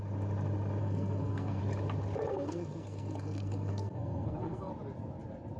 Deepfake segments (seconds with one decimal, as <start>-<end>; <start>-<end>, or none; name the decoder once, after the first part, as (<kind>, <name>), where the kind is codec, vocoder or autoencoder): 0.8-1.6 (codec, SNAC); 2.3-4.7